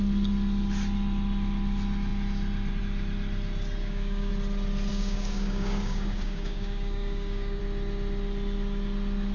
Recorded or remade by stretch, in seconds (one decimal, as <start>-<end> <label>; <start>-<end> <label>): 0.0-3.8 recorded; 3.8-4.3 remade; 4.3-4.9 recorded; 4.9-7.6 remade; 7.6-9.3 recorded